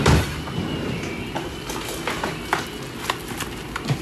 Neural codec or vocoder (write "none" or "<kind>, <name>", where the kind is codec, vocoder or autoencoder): none